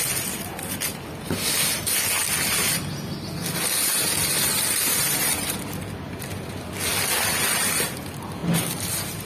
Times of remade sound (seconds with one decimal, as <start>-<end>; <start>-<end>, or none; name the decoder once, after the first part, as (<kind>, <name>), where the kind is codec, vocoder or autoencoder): none